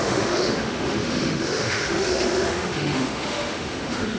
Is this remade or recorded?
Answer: remade